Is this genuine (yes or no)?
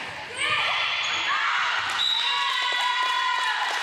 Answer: yes